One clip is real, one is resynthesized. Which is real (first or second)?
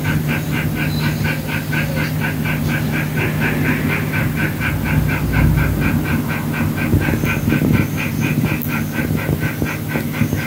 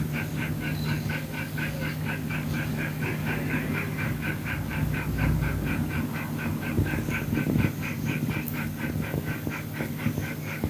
first